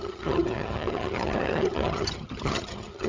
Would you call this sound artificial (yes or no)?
yes